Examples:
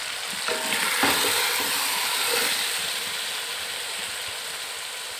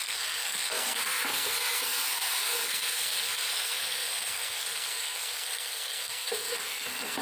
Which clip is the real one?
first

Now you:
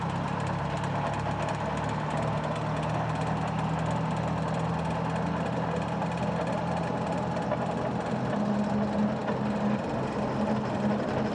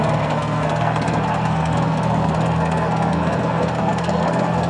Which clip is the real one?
first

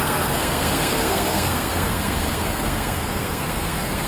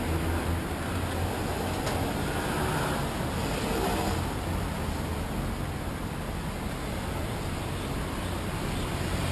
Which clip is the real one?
second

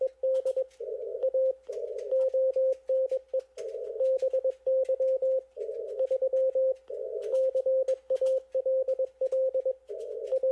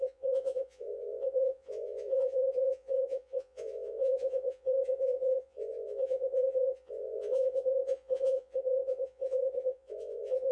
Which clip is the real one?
first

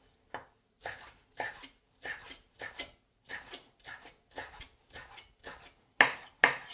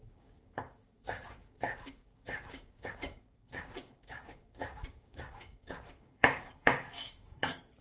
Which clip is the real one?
first